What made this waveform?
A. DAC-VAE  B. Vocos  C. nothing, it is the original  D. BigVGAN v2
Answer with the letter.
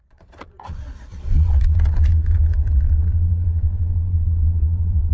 B